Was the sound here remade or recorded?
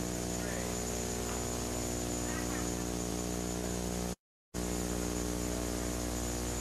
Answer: recorded